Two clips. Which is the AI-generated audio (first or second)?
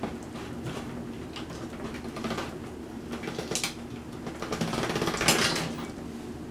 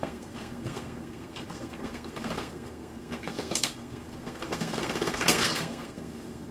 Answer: second